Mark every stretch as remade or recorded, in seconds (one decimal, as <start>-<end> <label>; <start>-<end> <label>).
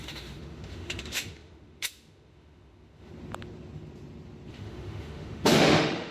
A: 0.0-3.1 remade; 3.1-4.5 recorded; 4.5-6.1 remade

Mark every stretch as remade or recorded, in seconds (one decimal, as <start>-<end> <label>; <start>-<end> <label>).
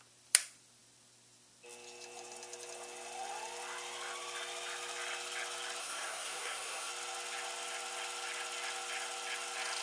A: 0.0-5.8 recorded; 5.8-6.9 remade; 6.9-9.8 recorded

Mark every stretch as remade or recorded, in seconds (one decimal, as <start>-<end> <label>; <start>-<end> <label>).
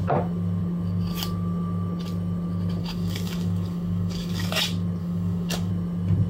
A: 0.0-2.8 recorded; 2.8-4.5 remade; 4.5-5.0 recorded; 5.0-5.7 remade; 5.7-6.3 recorded